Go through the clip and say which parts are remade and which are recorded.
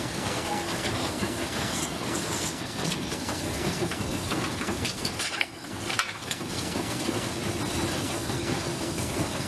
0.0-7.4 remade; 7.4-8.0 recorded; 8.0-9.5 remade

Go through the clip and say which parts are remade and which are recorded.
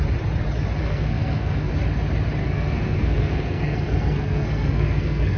0.0-0.8 recorded; 0.8-1.7 remade; 1.7-2.4 recorded; 2.4-5.4 remade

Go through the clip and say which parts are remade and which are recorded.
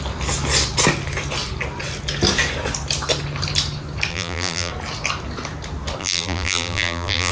0.0-4.1 recorded; 4.1-4.7 remade; 4.7-6.0 recorded; 6.0-7.3 remade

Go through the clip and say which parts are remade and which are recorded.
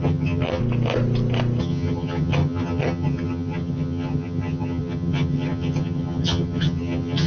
0.0-0.6 remade; 0.6-1.6 recorded; 1.6-7.3 remade